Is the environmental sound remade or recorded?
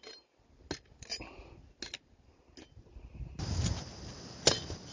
recorded